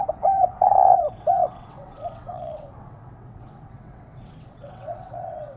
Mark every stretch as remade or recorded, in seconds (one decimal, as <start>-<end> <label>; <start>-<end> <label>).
0.0-5.6 remade